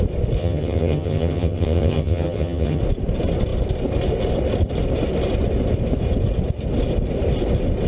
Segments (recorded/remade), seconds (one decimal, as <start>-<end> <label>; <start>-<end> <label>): 0.0-0.4 recorded; 0.4-2.8 remade; 2.8-7.9 recorded